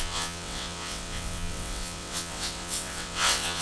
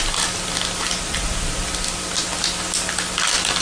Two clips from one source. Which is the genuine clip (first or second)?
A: second